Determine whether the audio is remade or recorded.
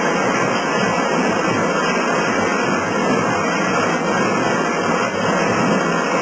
recorded